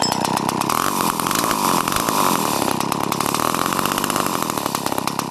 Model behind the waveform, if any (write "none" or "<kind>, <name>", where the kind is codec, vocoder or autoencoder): none